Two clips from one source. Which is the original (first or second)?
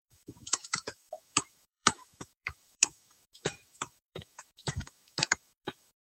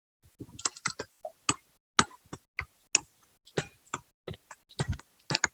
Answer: second